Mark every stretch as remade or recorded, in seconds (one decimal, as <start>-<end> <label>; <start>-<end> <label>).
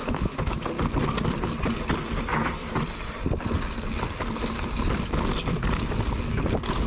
0.0-0.6 remade; 0.6-2.3 recorded; 2.3-2.8 remade; 2.8-6.9 recorded